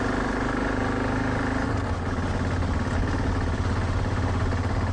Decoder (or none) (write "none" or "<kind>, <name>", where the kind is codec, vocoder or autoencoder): none